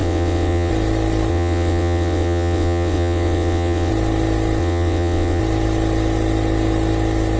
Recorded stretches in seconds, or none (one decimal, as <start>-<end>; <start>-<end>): 0.7-1.3; 3.9-4.6; 5.4-7.4